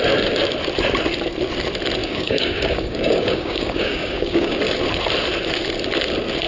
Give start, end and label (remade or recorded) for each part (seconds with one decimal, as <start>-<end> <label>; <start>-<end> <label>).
0.0-2.0 recorded; 2.0-4.6 remade; 4.6-6.5 recorded

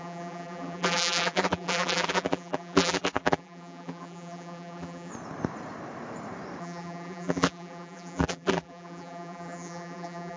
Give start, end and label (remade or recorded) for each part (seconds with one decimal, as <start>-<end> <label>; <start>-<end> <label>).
0.0-5.1 remade; 5.1-6.6 recorded; 6.6-10.4 remade